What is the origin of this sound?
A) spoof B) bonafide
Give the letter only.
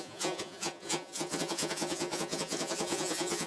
A